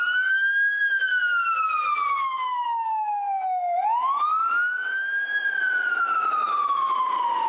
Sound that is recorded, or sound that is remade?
recorded